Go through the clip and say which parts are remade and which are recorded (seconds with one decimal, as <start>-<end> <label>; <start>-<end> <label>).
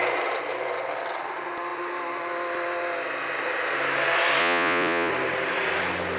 0.0-4.4 recorded; 4.4-5.1 remade; 5.1-6.2 recorded